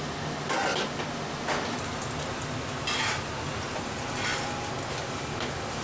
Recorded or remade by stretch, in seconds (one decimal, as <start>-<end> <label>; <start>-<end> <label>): 0.0-5.8 recorded